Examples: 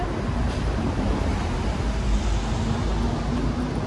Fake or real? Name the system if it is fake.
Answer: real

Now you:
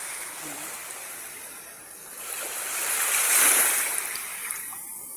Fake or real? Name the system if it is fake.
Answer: fake, vocoder, BigVGAN v2